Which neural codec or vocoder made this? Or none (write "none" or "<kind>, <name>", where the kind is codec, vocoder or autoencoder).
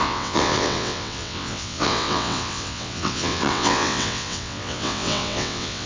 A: vocoder, WaveNeXt